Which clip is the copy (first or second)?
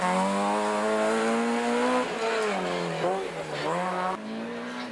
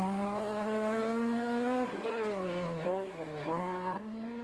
second